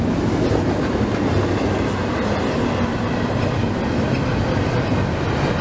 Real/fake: real